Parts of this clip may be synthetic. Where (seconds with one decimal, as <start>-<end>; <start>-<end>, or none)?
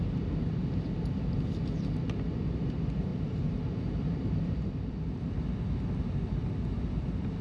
3.1-4.7